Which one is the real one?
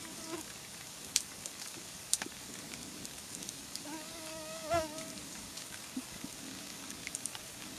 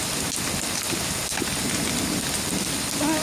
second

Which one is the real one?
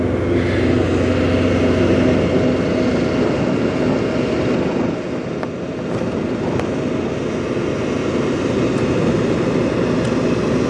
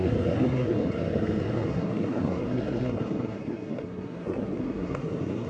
first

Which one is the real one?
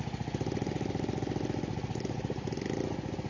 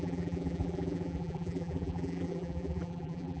first